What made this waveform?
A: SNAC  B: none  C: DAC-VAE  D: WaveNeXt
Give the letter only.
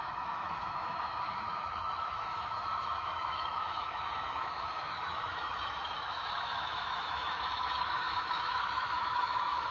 C